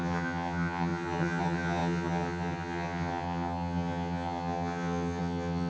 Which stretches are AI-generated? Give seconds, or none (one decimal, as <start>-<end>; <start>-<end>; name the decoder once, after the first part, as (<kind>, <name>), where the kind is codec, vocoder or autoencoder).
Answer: 0.0-5.7 (vocoder, HiFi-GAN)